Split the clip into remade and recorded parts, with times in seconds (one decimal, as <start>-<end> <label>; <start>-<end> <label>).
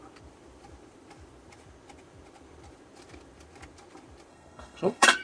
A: 0.0-4.3 recorded; 4.3-5.2 remade